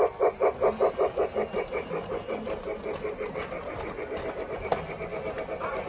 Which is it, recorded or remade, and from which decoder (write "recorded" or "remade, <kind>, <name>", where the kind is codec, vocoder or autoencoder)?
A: recorded